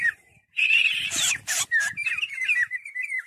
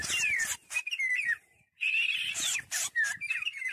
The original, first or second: second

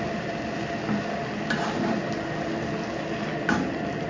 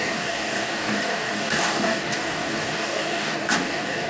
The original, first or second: first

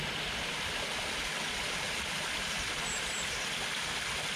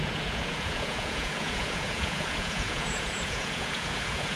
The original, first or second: first